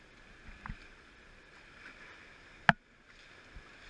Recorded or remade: recorded